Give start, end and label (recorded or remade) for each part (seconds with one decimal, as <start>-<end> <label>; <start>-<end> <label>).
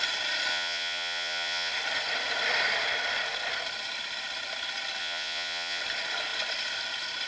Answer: 0.0-0.5 recorded; 0.5-1.7 remade; 1.7-5.0 recorded; 5.0-5.8 remade; 5.8-7.3 recorded